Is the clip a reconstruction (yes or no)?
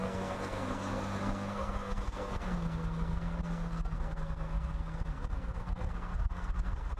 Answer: yes